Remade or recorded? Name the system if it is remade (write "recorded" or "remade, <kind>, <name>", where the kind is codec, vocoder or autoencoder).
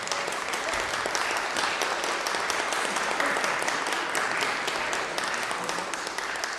recorded